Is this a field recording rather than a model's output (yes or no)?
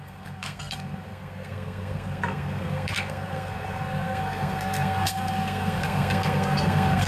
no